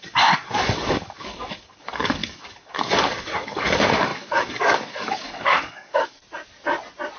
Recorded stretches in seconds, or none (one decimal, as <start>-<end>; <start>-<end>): 6.2-7.2